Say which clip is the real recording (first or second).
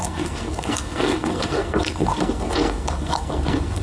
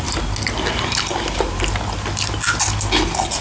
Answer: second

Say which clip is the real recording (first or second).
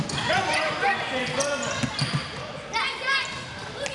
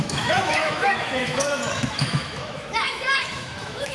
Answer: first